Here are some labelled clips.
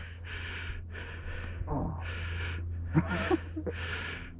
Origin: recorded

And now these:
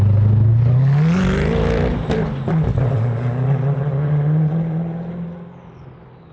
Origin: recorded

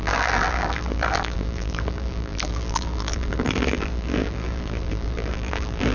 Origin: remade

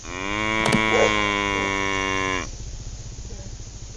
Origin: recorded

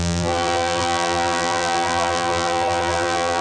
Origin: remade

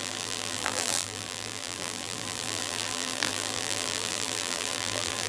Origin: remade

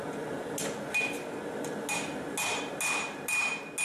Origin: recorded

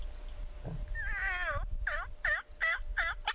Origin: recorded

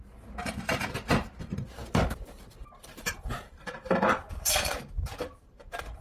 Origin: remade